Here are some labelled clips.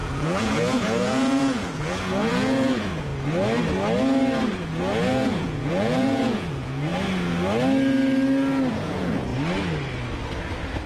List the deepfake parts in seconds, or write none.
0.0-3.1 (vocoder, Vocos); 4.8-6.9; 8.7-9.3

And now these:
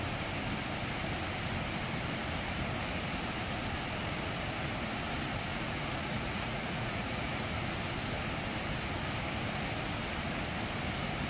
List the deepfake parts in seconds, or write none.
5.5-7.5 (vocoder, Vocos)

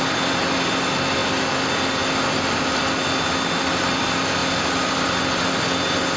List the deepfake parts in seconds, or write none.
none

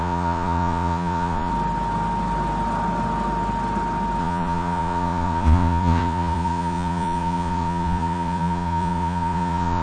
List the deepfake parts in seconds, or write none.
0.0-1.5 (vocoder, Vocos); 4.2-9.8

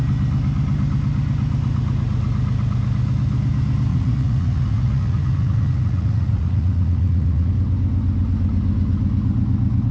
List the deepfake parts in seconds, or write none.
3.9-7.5 (vocoder, Vocos)